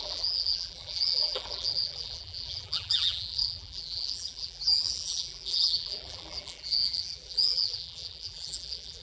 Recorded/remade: remade